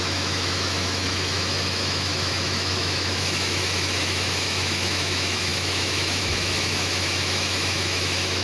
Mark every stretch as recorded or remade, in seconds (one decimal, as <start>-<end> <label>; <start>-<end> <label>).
0.0-8.4 remade